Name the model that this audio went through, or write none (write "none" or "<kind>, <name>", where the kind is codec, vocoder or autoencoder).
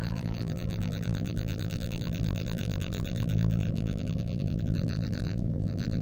vocoder, BigVGAN v2